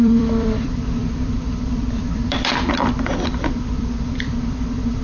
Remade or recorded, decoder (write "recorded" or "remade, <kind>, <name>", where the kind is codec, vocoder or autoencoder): remade, vocoder, BigVGAN v2